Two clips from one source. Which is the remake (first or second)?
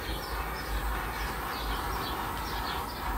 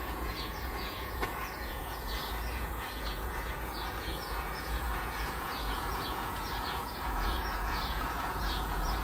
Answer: second